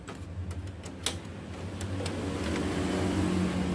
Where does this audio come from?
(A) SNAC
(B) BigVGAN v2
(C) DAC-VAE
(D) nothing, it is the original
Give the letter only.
D